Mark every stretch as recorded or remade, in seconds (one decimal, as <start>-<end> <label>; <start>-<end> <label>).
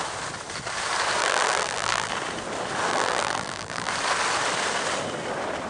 0.0-1.2 recorded; 1.2-2.1 remade; 2.1-2.9 recorded; 2.9-3.9 remade; 3.9-5.7 recorded